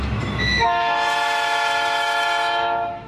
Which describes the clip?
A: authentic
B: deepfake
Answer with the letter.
B